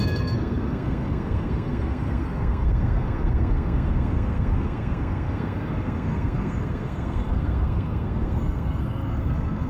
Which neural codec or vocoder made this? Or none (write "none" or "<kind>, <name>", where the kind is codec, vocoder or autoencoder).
codec, SNAC